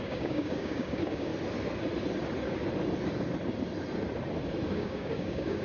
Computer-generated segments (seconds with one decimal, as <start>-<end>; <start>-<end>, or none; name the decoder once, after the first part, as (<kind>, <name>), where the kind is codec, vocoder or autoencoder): 0.0-1.3 (codec, DAC); 4.7-5.6